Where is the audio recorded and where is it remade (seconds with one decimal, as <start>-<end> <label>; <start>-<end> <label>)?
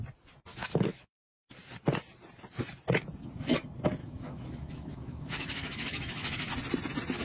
0.0-0.5 recorded; 0.5-1.1 remade; 1.1-4.0 recorded; 4.0-6.5 remade; 6.5-7.2 recorded